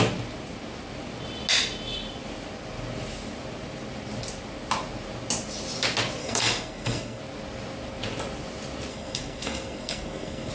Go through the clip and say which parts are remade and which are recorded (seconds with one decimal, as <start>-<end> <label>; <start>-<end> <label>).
0.0-6.2 recorded; 6.2-7.2 remade; 7.2-8.9 recorded; 8.9-10.5 remade